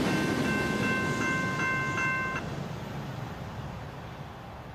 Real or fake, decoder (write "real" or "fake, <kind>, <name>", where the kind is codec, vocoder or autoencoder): real